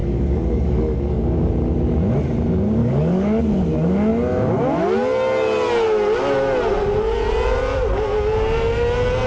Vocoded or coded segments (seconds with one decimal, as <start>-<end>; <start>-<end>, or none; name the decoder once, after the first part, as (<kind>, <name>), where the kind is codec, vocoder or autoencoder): 0.0-1.5 (codec, DAC); 2.8-3.4